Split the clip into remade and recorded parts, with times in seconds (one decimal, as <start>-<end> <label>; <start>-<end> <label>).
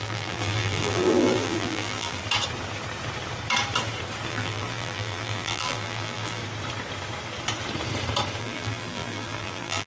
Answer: 0.0-2.2 remade; 2.2-4.3 recorded; 4.3-6.4 remade; 6.4-8.4 recorded; 8.4-9.9 remade